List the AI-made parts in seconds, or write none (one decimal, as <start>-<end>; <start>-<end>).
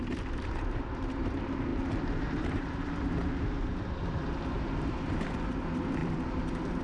0.0-6.8